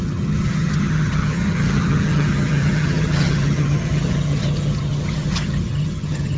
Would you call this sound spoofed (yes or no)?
yes